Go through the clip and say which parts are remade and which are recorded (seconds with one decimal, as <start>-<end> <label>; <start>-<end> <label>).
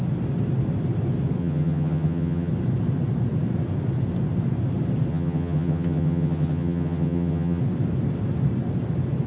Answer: 0.0-1.4 recorded; 1.4-2.5 remade; 2.5-5.1 recorded; 5.1-7.6 remade; 7.6-9.3 recorded